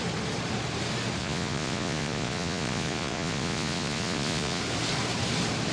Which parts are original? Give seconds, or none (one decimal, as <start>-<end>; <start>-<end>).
0.0-1.2; 4.6-5.7